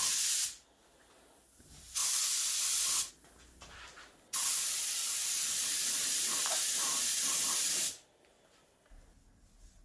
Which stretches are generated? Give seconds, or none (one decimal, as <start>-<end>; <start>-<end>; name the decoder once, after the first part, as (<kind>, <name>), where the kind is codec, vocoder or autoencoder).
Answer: 2.0-3.1 (vocoder, BigVGAN v2)